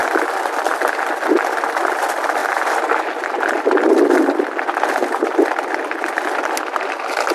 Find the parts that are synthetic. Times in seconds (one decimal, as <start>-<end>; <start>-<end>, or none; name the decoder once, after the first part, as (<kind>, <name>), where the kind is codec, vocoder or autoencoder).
none